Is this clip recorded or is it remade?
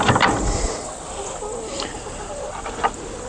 recorded